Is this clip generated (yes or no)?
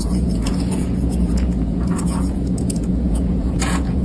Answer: yes